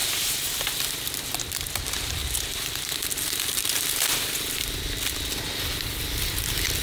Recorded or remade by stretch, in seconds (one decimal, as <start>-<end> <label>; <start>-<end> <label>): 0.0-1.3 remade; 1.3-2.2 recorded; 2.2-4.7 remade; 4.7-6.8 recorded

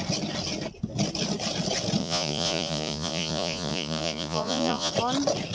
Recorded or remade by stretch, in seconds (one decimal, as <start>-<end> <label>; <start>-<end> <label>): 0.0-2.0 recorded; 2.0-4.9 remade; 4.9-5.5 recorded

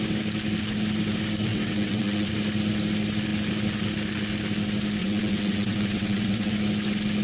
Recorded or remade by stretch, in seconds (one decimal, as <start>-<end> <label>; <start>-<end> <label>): 0.0-1.5 recorded; 1.5-2.3 remade; 2.3-5.0 recorded; 5.0-6.5 remade; 6.5-7.2 recorded

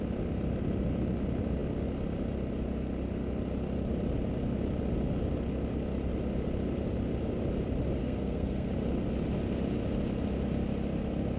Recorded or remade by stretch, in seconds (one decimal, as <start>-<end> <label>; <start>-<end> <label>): 0.0-8.0 recorded; 8.0-8.7 remade; 8.7-11.4 recorded

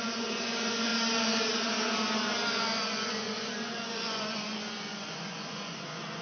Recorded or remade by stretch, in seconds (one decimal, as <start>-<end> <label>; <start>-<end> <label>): 0.0-0.9 remade; 0.9-2.5 recorded; 2.5-6.2 remade

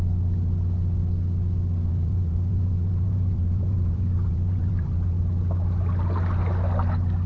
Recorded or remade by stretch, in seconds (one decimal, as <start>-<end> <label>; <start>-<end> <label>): 0.0-1.9 recorded; 1.9-5.2 remade; 5.2-7.3 recorded